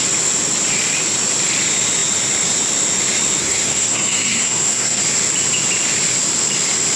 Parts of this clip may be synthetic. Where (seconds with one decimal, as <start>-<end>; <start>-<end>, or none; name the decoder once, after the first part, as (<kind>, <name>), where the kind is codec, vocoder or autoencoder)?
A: 3.4-5.0 (codec, SNAC)

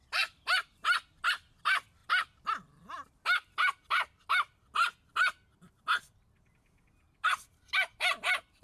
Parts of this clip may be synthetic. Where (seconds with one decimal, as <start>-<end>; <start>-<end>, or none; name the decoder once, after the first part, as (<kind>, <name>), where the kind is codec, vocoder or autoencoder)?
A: none